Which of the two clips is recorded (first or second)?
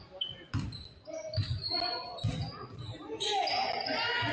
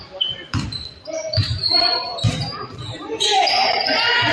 first